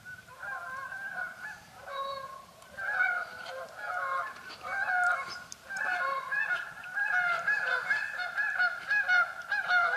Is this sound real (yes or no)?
no